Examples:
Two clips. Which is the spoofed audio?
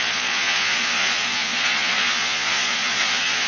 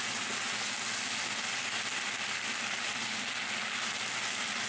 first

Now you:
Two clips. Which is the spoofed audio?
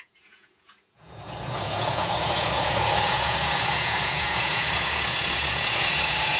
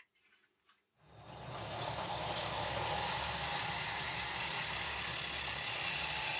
first